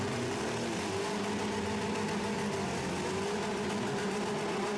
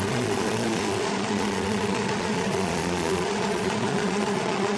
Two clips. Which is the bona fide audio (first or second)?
first